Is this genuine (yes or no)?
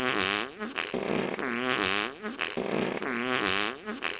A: yes